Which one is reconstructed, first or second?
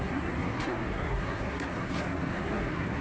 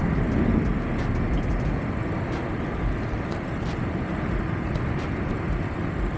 first